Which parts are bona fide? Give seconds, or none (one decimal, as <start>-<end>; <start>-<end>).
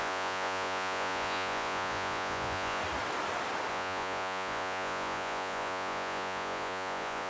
2.8-3.7